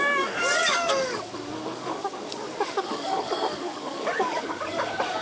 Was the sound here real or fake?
fake